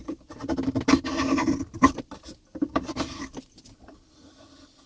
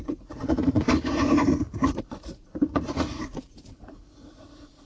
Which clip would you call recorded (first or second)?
first